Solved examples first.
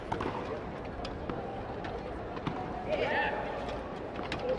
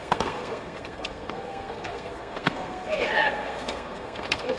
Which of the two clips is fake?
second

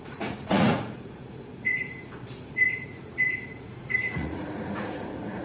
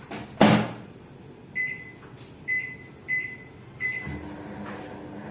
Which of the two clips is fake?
first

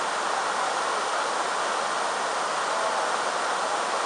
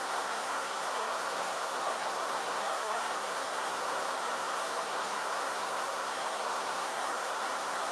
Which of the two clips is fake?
second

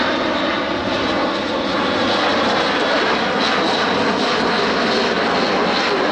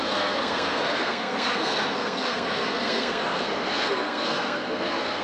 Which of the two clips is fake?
second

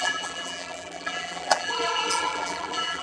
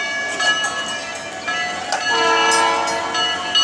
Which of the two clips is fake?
first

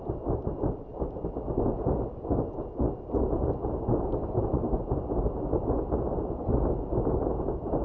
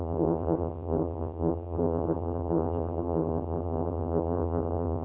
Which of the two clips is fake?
second